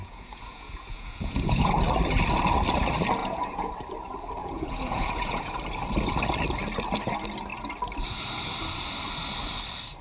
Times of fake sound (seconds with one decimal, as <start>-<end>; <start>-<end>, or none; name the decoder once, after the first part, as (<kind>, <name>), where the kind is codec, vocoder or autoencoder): 0.0-1.7 (vocoder, Vocos); 3.2-3.7; 4.4-5.5